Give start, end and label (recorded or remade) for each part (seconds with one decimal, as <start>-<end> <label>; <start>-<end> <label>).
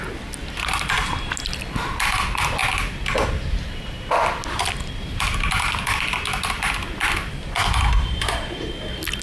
0.0-9.2 recorded